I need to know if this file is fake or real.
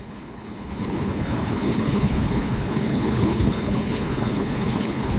fake